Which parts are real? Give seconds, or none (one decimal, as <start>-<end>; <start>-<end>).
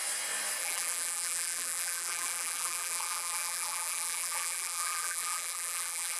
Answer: 0.0-0.6